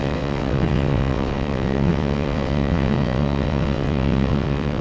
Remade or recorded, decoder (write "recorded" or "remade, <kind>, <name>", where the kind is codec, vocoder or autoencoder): remade, vocoder, WaveNeXt